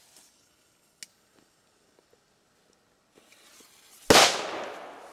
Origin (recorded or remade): recorded